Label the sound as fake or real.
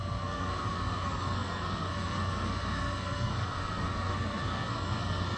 fake